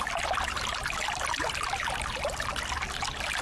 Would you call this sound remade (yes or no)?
no